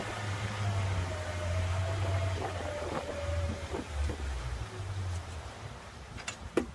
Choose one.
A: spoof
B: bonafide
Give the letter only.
A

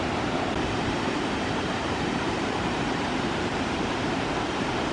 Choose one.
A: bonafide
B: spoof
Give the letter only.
B